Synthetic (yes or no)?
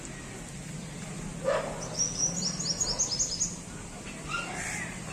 no